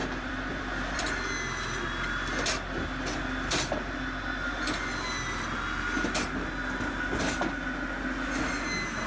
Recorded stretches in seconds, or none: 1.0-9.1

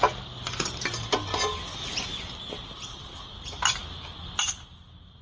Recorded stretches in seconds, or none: 0.0-5.2

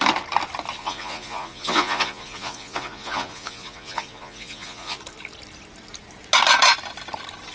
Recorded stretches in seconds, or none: 0.0-0.8; 5.0-7.5

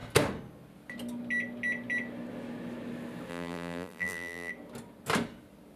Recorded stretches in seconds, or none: 0.0-3.3; 4.5-5.8

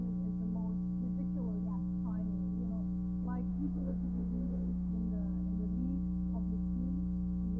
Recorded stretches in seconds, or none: 0.0-3.5; 4.9-7.6